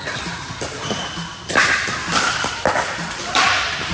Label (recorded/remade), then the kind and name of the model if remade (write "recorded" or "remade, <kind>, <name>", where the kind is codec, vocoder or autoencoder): recorded